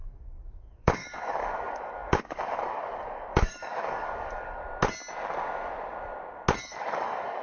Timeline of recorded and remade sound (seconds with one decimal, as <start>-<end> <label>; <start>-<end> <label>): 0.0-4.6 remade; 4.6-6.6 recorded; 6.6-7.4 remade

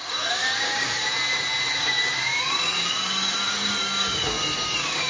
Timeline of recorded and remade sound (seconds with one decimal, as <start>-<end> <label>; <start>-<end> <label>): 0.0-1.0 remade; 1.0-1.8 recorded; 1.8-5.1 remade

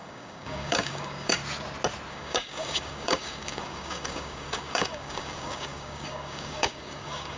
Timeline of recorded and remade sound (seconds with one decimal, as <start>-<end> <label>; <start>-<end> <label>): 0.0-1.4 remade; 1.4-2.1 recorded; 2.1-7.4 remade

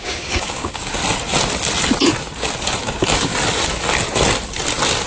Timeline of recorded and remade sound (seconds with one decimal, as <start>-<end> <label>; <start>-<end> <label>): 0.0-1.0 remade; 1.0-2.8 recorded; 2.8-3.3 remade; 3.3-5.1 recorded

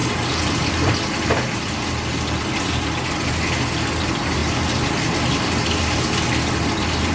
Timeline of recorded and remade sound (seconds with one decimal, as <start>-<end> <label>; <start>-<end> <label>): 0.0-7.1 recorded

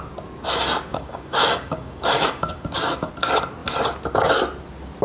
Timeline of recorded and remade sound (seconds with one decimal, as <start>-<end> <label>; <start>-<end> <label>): 0.0-0.9 recorded; 0.9-3.1 remade; 3.1-5.0 recorded

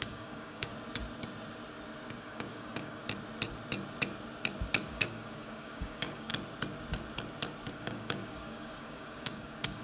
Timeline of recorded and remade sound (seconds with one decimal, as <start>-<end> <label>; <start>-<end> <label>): 0.0-0.7 remade; 0.7-2.2 recorded; 2.2-3.0 remade; 3.0-4.9 recorded; 4.9-6.3 remade; 6.3-7.7 recorded; 7.7-9.8 remade

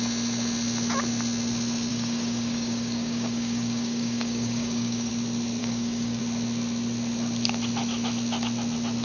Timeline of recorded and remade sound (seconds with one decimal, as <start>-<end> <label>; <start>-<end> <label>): 0.0-1.9 recorded; 1.9-5.1 remade; 5.1-5.6 recorded; 5.6-6.2 remade; 6.2-9.0 recorded